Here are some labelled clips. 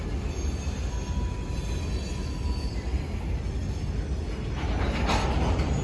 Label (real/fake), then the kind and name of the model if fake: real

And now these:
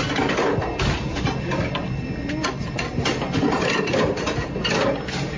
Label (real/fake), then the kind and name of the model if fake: real